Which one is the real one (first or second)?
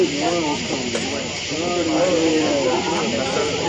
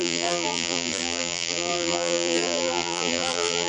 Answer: first